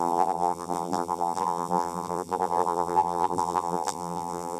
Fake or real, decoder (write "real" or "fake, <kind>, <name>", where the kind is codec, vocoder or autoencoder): fake, vocoder, BigVGAN v2